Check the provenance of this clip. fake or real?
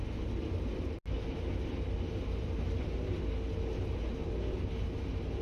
real